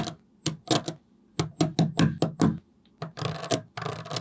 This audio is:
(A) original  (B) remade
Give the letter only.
A